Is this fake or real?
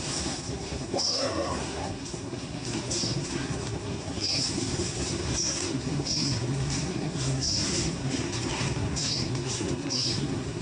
fake